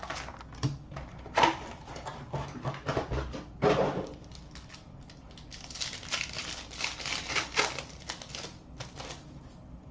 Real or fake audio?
real